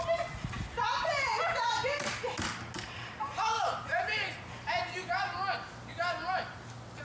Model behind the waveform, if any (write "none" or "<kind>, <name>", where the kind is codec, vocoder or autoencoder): none